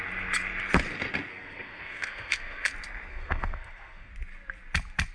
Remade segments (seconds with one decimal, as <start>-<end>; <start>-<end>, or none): 1.3-2.7; 3.1-4.1